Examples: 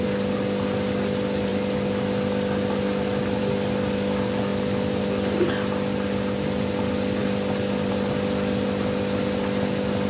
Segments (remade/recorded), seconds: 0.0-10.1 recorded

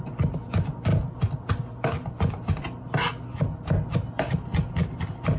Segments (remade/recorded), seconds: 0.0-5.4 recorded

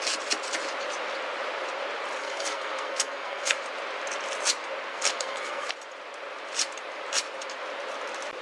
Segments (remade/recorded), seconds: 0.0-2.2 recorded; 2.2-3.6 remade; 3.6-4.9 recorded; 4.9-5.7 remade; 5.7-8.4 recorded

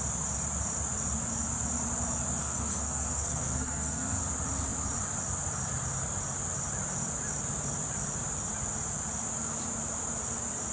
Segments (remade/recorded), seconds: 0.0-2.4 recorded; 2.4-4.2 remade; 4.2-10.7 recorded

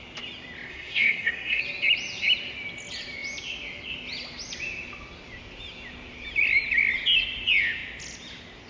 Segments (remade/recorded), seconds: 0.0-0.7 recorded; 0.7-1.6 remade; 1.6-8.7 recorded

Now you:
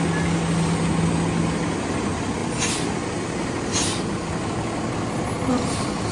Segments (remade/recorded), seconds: 0.0-6.1 recorded

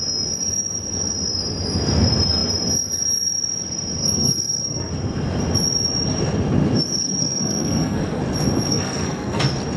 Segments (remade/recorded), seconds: 0.0-4.0 recorded; 4.0-4.9 remade; 4.9-7.2 recorded; 7.2-8.2 remade; 8.2-8.7 recorded; 8.7-9.4 remade; 9.4-9.8 recorded

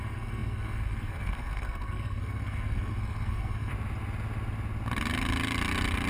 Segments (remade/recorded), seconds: 0.0-3.7 remade; 3.7-6.1 recorded